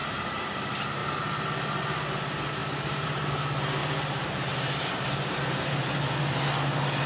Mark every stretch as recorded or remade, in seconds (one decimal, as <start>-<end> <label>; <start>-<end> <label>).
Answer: 0.0-0.6 remade; 0.6-2.6 recorded; 2.6-3.3 remade; 3.3-3.8 recorded; 3.8-5.4 remade; 5.4-7.1 recorded